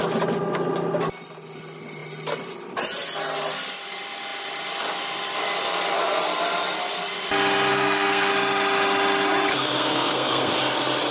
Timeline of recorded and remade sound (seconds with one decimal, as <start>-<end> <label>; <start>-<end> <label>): 0.0-7.7 recorded; 7.7-8.3 remade; 8.3-9.5 recorded; 9.5-10.5 remade; 10.5-11.1 recorded